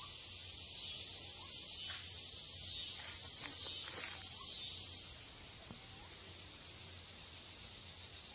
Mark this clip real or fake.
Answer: real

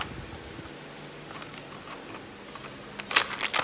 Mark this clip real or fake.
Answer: real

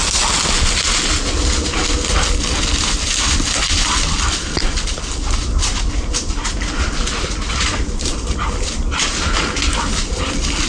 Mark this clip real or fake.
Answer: real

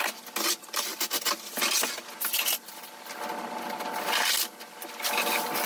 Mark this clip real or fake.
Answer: real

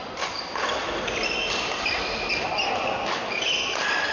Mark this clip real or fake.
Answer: real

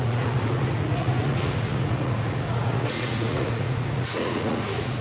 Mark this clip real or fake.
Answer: fake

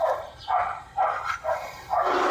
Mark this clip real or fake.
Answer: fake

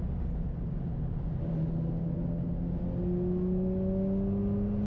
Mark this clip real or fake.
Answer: real